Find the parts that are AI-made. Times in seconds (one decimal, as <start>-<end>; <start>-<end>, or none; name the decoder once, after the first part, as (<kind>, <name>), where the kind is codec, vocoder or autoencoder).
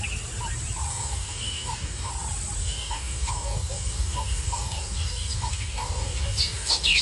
0.9-2.1 (codec, DAC); 2.6-7.0